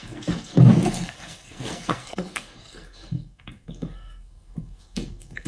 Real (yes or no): no